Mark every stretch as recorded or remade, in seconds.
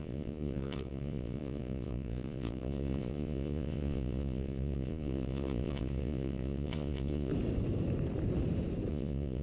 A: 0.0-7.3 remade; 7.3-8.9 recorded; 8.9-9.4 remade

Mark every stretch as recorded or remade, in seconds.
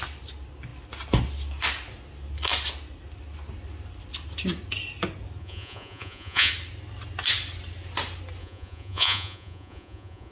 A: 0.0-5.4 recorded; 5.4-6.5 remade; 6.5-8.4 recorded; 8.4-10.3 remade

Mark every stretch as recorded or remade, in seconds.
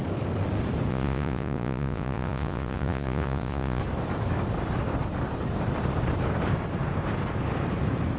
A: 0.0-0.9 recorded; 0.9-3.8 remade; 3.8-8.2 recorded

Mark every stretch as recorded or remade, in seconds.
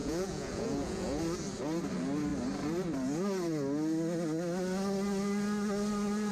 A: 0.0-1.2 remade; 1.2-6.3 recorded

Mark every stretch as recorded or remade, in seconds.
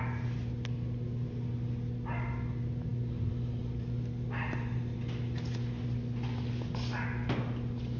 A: 0.0-8.0 recorded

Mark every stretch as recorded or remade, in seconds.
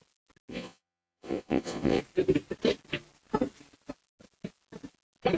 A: 0.0-0.5 recorded; 0.5-2.0 remade; 2.0-5.4 recorded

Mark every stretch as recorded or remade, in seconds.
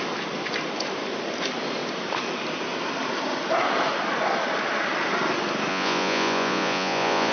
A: 0.0-5.7 recorded; 5.7-7.3 remade